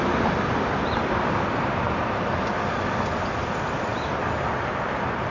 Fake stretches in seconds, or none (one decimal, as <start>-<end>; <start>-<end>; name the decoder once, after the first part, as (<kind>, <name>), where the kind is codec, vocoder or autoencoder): none